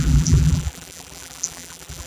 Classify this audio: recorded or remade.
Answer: remade